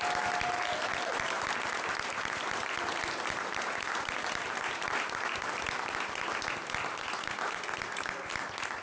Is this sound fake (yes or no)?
no